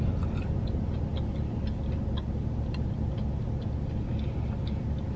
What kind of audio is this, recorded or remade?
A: recorded